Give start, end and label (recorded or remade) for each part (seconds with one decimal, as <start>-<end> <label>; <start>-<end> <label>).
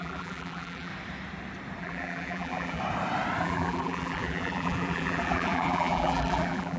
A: 0.0-0.9 remade; 0.9-1.8 recorded; 1.8-2.8 remade; 2.8-3.4 recorded; 3.4-6.8 remade